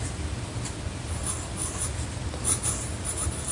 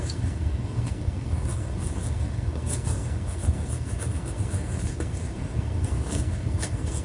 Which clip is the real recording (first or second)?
first